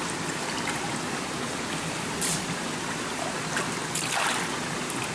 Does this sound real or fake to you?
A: real